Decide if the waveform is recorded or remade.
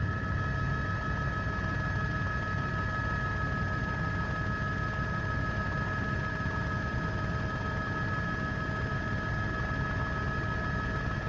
recorded